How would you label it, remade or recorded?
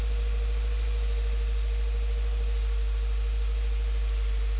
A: recorded